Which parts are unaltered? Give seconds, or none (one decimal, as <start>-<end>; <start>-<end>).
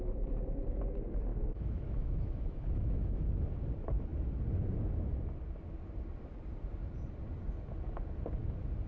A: 0.0-1.3; 3.4-8.9